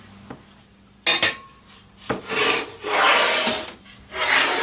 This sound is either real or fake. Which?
real